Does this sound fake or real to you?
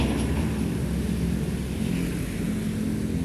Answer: real